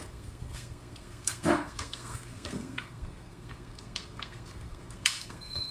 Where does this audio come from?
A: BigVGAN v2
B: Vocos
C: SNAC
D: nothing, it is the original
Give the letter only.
C